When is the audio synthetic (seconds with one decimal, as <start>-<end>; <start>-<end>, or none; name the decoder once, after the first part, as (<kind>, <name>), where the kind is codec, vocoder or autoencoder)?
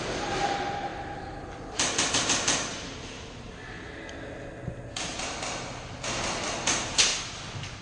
none